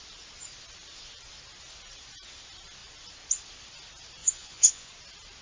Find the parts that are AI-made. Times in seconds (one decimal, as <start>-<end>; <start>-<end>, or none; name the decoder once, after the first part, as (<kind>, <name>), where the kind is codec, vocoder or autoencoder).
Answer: 4.2-4.9 (vocoder, Vocos)